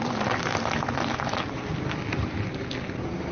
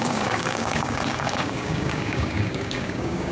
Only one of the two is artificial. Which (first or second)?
second